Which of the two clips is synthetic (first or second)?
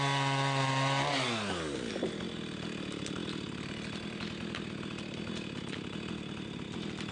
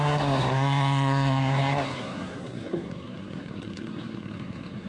second